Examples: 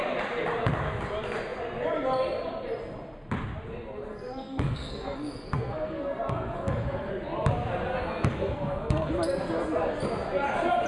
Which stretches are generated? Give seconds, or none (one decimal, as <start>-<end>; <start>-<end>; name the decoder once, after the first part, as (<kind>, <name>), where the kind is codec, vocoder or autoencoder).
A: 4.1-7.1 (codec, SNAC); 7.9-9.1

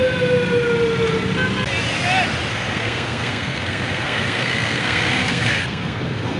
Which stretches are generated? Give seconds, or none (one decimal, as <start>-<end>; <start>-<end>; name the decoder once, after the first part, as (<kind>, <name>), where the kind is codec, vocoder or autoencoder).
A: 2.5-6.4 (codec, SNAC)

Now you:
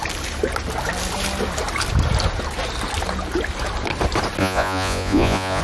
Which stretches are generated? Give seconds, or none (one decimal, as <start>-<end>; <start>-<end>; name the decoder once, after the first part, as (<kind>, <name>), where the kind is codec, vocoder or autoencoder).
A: 4.4-5.6 (vocoder, Vocos)